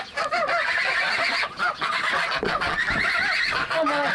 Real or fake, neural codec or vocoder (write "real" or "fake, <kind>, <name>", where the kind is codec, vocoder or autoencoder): real